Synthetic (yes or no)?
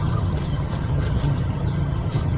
yes